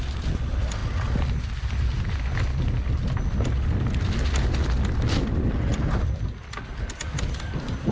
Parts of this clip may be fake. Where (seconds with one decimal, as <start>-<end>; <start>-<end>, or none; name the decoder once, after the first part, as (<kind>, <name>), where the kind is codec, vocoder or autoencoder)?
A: none